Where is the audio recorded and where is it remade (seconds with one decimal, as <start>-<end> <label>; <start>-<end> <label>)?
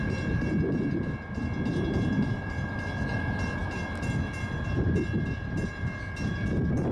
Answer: 0.0-6.9 recorded